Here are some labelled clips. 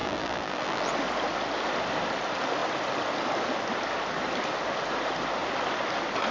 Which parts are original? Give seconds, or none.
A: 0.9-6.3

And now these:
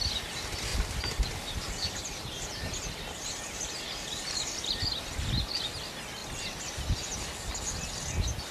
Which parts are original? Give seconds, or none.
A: 0.0-0.7; 4.7-8.5